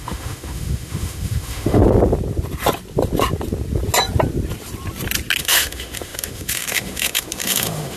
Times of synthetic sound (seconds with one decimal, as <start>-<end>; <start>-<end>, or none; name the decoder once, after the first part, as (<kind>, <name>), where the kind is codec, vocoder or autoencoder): 0.0-1.8 (autoencoder, DAC-VAE); 5.4-8.0